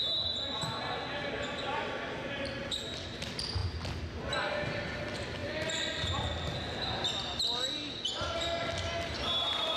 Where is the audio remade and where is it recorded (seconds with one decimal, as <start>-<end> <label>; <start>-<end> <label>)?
0.0-2.6 recorded; 2.6-3.2 remade; 3.2-9.8 recorded